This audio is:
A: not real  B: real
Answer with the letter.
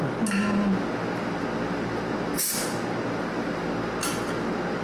B